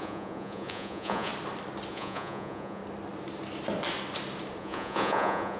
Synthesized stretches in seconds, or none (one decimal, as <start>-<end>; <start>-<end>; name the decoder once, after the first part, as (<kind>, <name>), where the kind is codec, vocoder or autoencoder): 0.0-1.3 (vocoder, Vocos); 1.9-2.8; 4.6-5.6